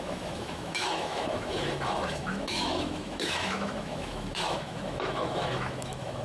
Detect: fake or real fake